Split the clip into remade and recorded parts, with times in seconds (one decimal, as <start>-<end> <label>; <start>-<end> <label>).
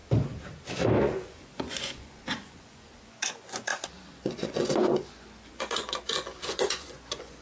0.0-1.0 recorded; 1.0-7.4 remade